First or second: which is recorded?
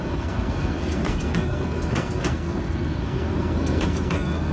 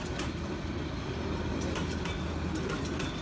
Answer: second